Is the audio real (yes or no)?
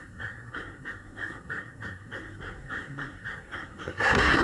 no